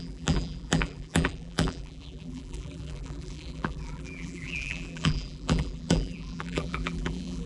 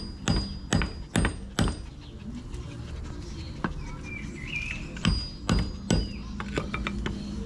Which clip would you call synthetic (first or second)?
first